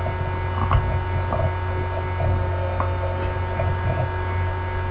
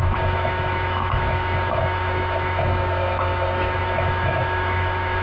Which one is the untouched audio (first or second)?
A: first